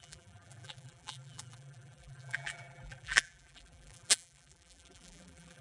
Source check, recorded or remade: remade